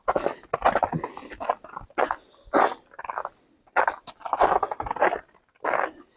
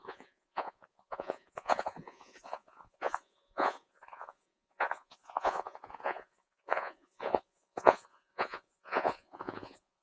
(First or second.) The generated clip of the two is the second